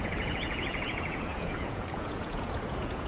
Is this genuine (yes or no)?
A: no